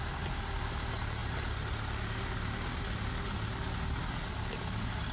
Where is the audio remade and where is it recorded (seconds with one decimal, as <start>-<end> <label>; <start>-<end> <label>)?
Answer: 0.0-5.1 recorded